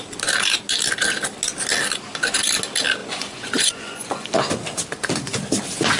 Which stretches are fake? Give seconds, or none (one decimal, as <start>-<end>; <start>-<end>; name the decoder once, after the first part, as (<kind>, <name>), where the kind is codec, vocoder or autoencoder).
3.0-4.3 (vocoder, Vocos)